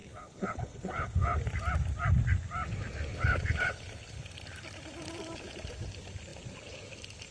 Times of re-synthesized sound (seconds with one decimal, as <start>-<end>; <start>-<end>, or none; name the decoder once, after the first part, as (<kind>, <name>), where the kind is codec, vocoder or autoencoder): 0.0-1.4 (codec, HILCodec); 3.1-4.2